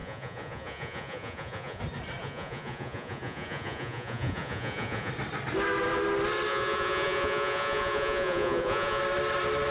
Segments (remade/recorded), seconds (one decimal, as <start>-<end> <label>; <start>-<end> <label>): 0.0-1.8 remade; 1.8-2.2 recorded; 2.2-5.1 remade; 5.1-6.5 recorded; 6.5-9.0 remade; 9.0-9.7 recorded